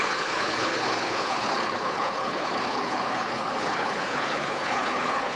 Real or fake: fake